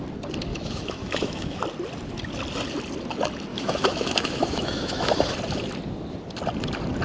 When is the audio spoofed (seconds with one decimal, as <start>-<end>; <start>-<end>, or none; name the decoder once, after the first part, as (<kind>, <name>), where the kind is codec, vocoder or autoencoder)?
0.5-1.6 (autoencoder, DAC-VAE); 3.5-5.1